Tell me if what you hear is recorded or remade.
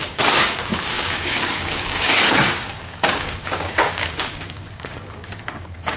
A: remade